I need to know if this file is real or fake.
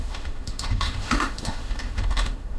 fake